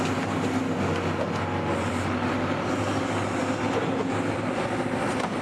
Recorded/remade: recorded